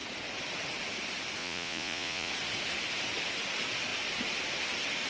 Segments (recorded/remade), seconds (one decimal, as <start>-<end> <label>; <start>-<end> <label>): 0.0-1.4 recorded; 1.4-2.3 remade; 2.3-5.1 recorded

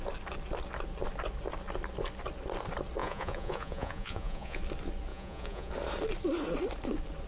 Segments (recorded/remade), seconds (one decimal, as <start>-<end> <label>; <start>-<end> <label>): 0.0-3.0 recorded; 3.0-4.6 remade; 4.6-5.1 recorded; 5.1-5.7 remade; 5.7-7.3 recorded

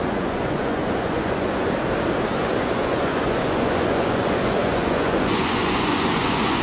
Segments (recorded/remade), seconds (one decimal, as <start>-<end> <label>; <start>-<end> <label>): 0.0-1.7 remade; 1.7-2.3 recorded; 2.3-6.6 remade

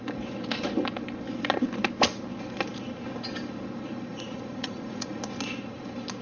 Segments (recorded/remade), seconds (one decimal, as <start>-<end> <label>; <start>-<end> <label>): 0.0-4.1 recorded; 4.1-5.2 remade; 5.2-6.2 recorded